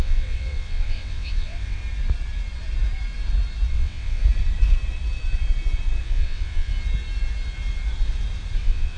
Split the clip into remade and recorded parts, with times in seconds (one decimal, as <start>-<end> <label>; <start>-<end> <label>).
0.0-1.8 remade; 1.8-3.7 recorded; 3.7-4.2 remade; 4.2-6.0 recorded; 6.0-6.7 remade; 6.7-8.6 recorded; 8.6-9.0 remade